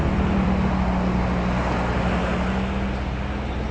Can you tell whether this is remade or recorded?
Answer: remade